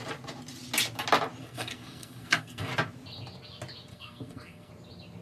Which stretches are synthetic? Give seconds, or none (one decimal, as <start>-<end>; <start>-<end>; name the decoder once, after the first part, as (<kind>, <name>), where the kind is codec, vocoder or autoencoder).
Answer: 1.4-2.7 (codec, SNAC); 3.9-4.7